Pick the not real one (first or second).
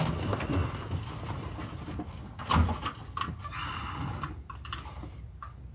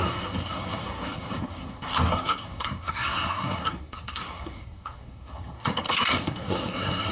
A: second